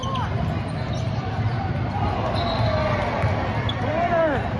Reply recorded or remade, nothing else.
recorded